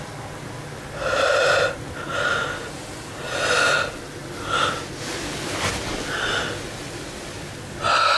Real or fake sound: real